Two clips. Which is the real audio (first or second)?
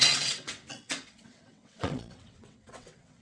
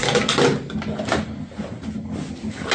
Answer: second